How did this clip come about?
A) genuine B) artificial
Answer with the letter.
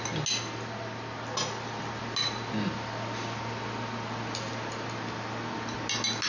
A